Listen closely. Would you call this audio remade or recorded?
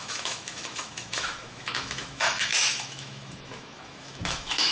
remade